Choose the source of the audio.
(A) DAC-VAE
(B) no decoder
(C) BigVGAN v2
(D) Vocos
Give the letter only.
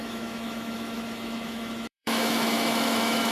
A